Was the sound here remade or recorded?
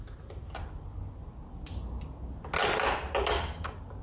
recorded